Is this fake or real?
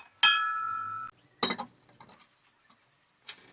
real